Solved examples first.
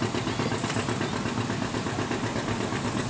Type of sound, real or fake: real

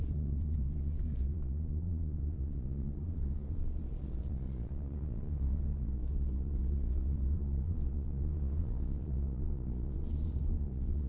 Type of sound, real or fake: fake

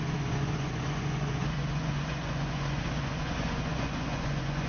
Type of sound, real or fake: fake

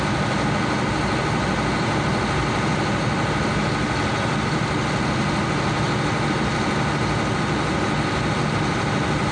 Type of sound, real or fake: real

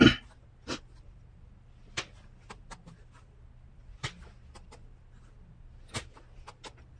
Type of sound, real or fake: real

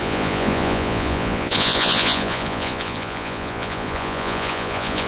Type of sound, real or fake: fake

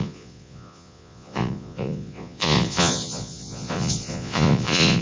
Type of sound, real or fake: fake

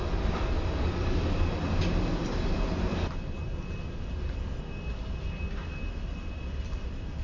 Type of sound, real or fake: real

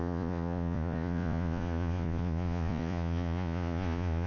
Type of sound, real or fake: fake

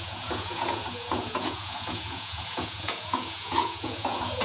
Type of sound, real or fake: fake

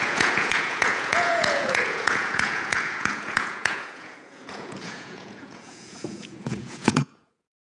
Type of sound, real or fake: fake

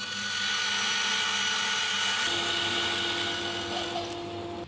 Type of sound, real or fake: real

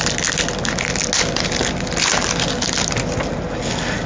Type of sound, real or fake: real